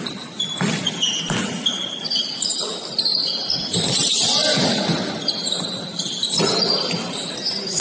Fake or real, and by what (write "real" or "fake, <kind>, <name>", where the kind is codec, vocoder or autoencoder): real